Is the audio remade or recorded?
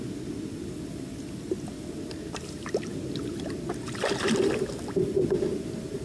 recorded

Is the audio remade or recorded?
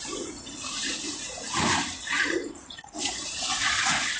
remade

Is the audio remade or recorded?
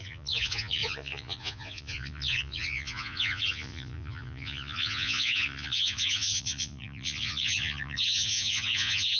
remade